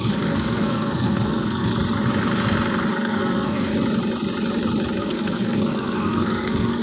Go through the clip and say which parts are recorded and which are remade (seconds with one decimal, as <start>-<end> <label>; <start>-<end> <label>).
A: 0.0-1.7 remade; 1.7-2.9 recorded; 2.9-3.7 remade; 3.7-5.0 recorded; 5.0-6.8 remade